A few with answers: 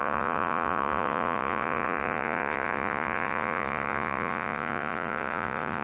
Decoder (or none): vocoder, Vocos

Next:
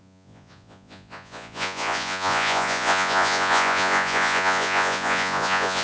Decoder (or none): vocoder, Vocos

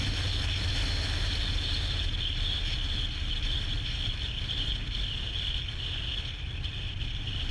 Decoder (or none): none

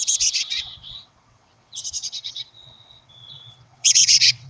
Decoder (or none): vocoder, WaveNeXt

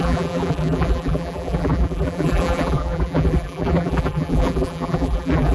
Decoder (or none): vocoder, BigVGAN v2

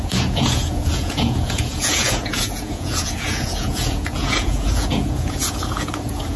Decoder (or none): vocoder, Vocos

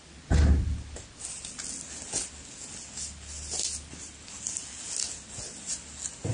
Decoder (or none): none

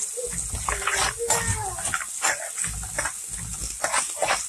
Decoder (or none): none